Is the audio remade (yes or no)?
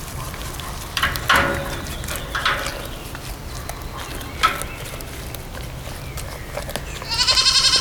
no